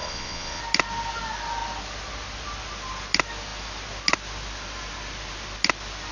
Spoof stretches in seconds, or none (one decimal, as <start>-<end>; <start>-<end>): 0.0-0.6